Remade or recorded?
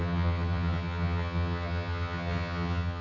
remade